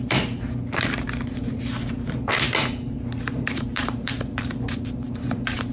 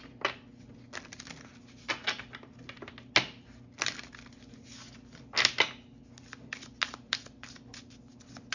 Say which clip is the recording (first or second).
second